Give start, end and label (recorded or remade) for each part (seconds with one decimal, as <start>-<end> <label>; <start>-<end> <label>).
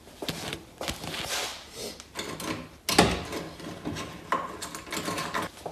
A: 0.0-5.7 recorded